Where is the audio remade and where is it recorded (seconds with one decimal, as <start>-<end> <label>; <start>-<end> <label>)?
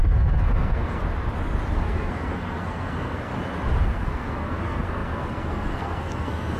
0.0-1.0 remade; 1.0-1.7 recorded; 1.7-3.3 remade; 3.3-3.8 recorded; 3.8-6.6 remade